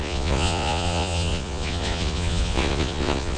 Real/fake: fake